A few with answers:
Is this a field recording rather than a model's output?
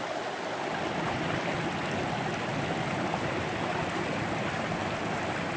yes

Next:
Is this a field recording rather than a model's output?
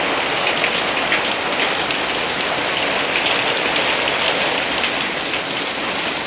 yes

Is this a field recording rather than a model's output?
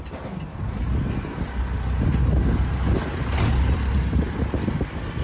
yes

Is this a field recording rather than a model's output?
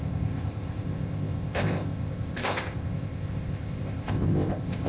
no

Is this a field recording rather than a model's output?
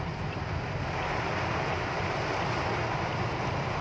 yes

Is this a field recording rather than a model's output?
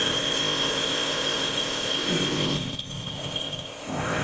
no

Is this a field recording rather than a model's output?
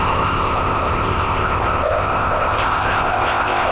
no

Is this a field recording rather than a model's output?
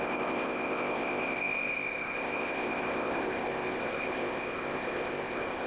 no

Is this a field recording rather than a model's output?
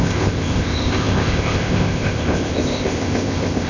no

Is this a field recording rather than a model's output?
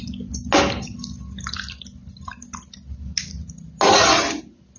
yes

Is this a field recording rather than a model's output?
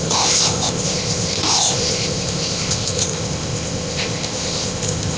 no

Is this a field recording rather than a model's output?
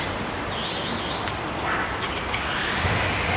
yes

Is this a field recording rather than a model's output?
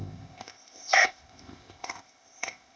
no